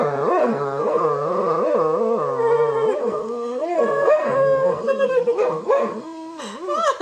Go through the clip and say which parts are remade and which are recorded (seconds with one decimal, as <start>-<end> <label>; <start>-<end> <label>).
0.0-0.4 recorded; 0.4-1.0 remade; 1.0-3.0 recorded; 3.0-6.4 remade; 6.4-7.0 recorded